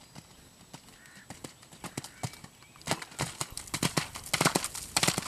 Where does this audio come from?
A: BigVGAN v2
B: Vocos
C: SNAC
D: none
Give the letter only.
D